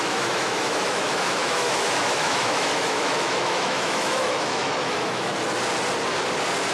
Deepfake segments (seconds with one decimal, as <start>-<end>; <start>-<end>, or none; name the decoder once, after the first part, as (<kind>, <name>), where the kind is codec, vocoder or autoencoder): 0.0-5.3 (autoencoder, DAC-VAE)